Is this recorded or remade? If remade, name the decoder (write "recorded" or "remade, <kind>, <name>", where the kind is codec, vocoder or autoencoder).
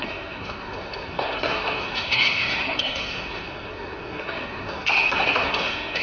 remade, codec, SNAC